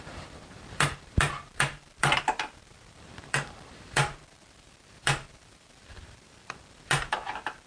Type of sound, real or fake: fake